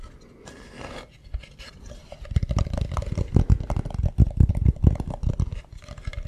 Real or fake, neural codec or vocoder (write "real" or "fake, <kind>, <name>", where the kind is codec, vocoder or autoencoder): real